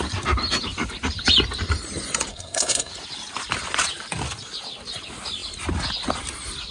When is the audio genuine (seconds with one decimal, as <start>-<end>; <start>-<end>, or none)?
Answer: 0.0-2.3; 2.9-6.7